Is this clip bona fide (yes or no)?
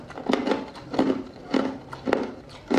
yes